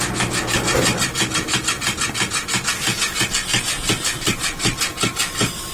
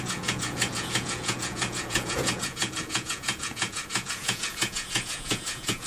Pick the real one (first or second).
first